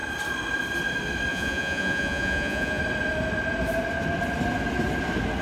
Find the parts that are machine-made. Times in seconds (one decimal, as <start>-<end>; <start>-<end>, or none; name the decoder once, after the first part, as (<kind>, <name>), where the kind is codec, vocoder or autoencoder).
1.3-2.8 (vocoder, Vocos)